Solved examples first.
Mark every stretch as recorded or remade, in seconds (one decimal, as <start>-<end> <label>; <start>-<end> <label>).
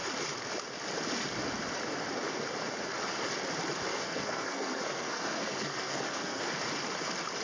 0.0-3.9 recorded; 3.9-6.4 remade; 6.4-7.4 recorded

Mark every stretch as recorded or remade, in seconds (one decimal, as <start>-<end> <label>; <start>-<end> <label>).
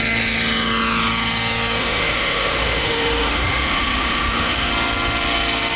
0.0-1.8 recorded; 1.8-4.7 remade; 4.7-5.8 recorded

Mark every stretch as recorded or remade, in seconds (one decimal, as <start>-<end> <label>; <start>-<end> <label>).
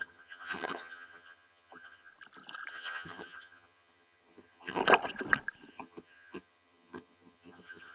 0.0-2.1 remade; 2.1-2.7 recorded; 2.7-4.8 remade; 4.8-5.7 recorded; 5.7-7.9 remade